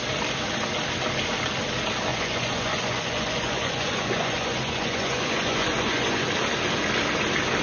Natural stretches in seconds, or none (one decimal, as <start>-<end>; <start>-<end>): 0.0-2.1; 6.3-7.6